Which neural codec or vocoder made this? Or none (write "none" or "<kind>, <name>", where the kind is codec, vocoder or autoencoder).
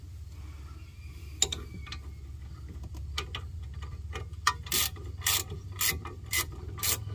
none